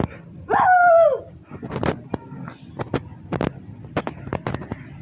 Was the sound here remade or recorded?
recorded